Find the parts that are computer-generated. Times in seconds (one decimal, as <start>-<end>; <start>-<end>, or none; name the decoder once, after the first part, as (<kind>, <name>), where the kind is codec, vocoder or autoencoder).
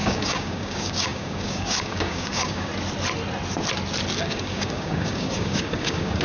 0.0-2.7 (codec, DAC); 4.2-6.2